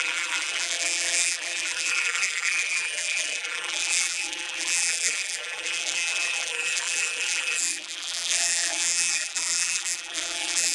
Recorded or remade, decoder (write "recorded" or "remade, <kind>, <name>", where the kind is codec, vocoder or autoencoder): remade, vocoder, BigVGAN v2